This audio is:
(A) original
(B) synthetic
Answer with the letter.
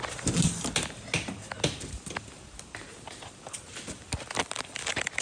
A